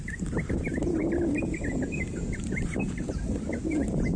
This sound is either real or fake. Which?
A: real